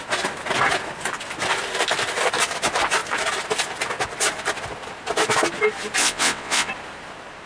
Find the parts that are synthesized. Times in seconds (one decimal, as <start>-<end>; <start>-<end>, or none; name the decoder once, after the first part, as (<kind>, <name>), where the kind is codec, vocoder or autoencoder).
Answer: 6.0-6.7 (vocoder, WaveNeXt)